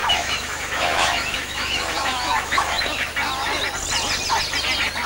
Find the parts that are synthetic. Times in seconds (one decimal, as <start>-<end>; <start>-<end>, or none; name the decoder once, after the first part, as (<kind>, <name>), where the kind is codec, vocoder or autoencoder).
0.0-3.1 (autoencoder, DAC-VAE)